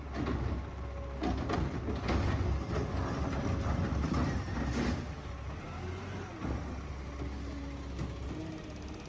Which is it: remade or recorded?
recorded